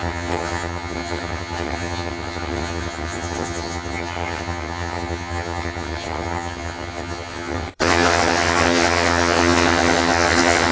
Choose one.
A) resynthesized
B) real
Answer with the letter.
A